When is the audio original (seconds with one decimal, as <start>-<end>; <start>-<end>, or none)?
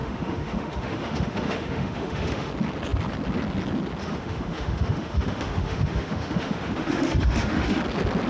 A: 2.5-4.0; 7.8-8.3